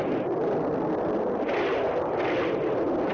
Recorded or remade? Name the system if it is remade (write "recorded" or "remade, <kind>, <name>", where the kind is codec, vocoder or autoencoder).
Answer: recorded